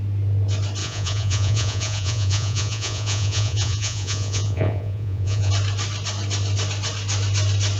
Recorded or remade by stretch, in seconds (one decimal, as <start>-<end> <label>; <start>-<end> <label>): 0.0-0.8 recorded; 0.8-5.5 remade; 5.5-7.8 recorded